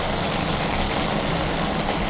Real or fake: real